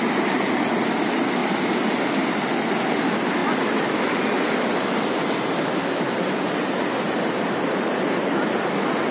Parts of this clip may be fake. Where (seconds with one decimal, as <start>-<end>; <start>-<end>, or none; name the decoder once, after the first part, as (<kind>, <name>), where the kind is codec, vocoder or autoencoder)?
none